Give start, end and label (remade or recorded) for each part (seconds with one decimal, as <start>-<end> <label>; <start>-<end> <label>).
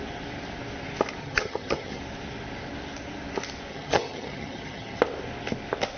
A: 0.0-1.2 recorded; 1.2-2.0 remade; 2.0-3.7 recorded; 3.7-5.0 remade; 5.0-6.0 recorded